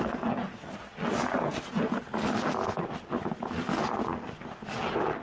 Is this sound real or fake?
real